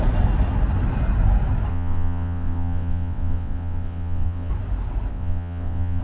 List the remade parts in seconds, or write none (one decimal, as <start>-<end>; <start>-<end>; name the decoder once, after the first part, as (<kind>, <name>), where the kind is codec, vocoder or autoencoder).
1.7-4.5 (vocoder, WaveNeXt); 5.1-6.0